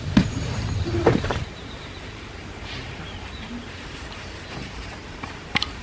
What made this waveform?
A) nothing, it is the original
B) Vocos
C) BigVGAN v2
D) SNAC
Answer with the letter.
C